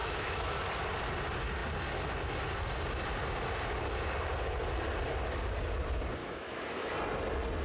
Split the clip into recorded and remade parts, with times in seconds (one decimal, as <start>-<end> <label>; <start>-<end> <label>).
0.0-0.6 remade; 0.6-6.2 recorded; 6.2-6.9 remade; 6.9-7.6 recorded